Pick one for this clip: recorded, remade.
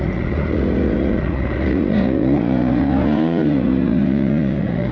remade